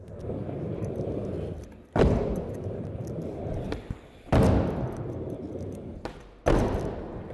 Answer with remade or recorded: recorded